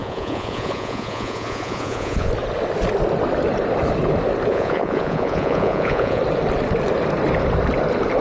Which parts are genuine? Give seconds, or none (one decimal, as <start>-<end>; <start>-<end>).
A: 2.3-4.5; 6.2-8.2